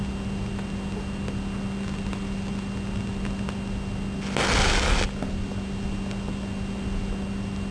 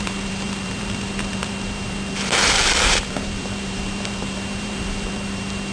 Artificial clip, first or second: second